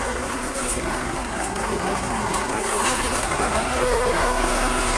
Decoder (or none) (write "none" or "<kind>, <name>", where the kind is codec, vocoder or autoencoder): codec, SNAC